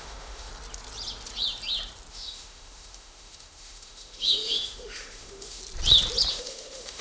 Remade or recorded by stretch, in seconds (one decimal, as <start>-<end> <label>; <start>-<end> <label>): 0.0-0.5 remade; 0.5-2.1 recorded; 2.1-5.6 remade; 5.6-6.3 recorded; 6.3-7.0 remade